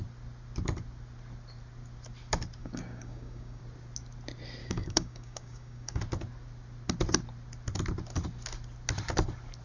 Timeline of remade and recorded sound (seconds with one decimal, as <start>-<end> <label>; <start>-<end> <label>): 0.0-2.6 recorded; 2.6-3.6 remade; 3.6-4.6 recorded; 4.6-6.0 remade; 6.0-9.6 recorded